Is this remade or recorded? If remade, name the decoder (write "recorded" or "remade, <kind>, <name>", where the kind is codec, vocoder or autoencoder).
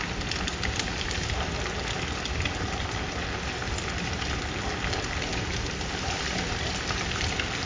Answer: recorded